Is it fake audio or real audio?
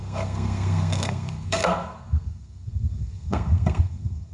fake